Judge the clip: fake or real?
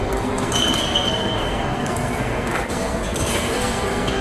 fake